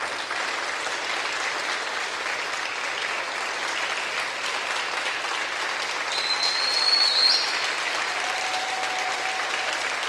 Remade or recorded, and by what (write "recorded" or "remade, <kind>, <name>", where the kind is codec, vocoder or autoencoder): recorded